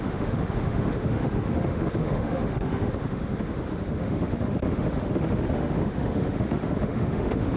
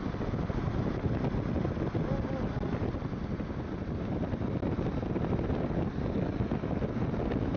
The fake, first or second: first